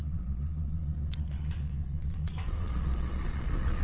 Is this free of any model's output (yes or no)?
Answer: no